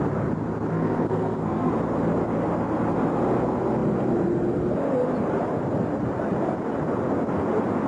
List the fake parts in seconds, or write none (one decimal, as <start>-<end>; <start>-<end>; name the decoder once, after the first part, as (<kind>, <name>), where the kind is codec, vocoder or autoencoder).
0.7-1.7 (codec, SNAC)

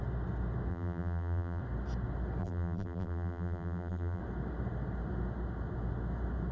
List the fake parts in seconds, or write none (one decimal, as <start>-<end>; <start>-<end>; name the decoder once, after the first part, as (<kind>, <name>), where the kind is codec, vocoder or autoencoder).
0.7-1.6 (vocoder, BigVGAN v2); 2.4-4.2